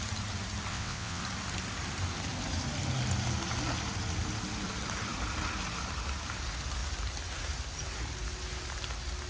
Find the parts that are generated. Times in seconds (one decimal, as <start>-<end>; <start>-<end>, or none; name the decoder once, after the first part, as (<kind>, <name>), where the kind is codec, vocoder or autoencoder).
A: 0.7-1.2 (vocoder, WaveNeXt)